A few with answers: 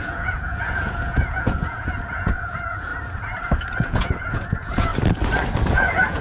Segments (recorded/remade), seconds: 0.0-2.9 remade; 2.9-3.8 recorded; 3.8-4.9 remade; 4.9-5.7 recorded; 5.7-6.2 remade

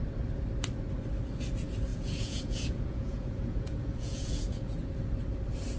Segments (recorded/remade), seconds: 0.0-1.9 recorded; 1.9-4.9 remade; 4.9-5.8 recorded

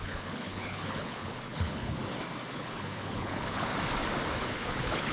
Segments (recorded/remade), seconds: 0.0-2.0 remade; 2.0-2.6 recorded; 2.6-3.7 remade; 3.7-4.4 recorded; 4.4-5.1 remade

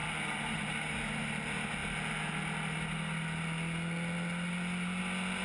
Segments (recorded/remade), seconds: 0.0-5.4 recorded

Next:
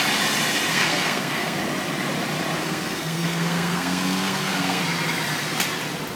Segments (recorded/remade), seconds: 0.0-0.7 recorded; 0.7-1.6 remade; 1.6-2.6 recorded; 2.6-4.8 remade; 4.8-6.2 recorded

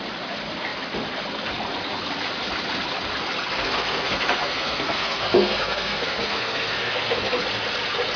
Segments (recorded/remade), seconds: 0.0-3.5 recorded; 3.5-7.4 remade; 7.4-8.2 recorded

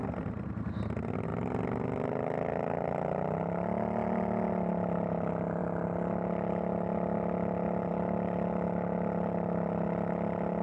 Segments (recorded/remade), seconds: 0.0-10.6 recorded

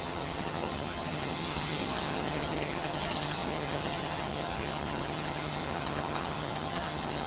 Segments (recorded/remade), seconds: 0.0-7.3 remade